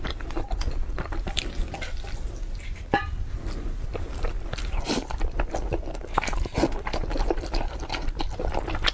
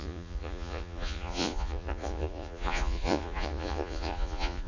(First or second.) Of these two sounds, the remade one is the second